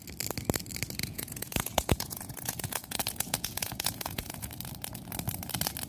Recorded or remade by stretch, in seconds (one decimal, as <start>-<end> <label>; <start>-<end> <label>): 0.0-1.0 recorded; 1.0-4.5 remade; 4.5-5.9 recorded